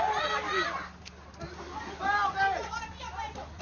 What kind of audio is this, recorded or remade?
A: recorded